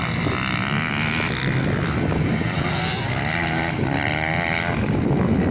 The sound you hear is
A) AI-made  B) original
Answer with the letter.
B